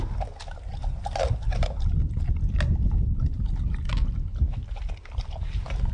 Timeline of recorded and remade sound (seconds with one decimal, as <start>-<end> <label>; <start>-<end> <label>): 0.0-5.9 recorded